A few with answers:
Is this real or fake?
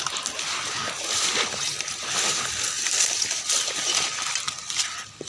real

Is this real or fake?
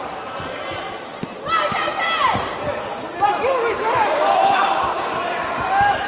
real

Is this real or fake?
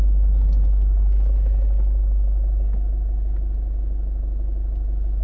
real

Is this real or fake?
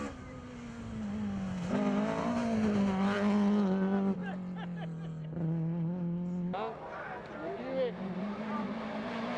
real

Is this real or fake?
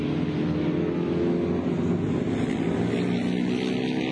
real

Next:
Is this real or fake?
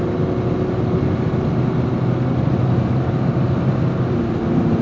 real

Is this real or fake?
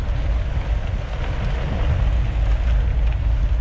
real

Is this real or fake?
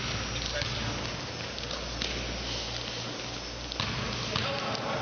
real